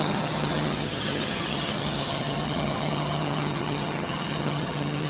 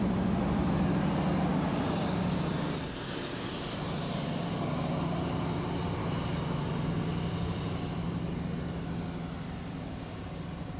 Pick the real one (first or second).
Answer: second